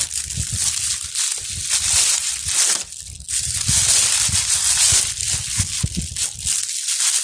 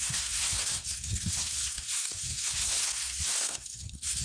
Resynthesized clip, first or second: second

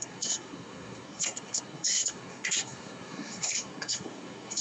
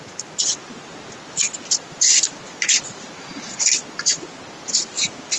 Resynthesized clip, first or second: first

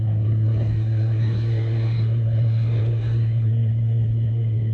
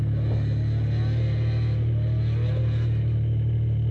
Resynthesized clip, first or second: first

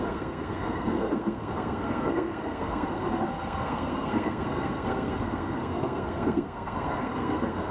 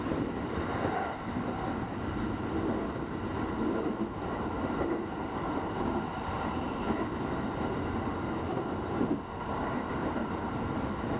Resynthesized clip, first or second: first